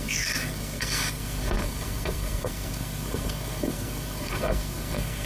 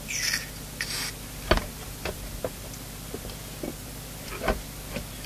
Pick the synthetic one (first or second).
first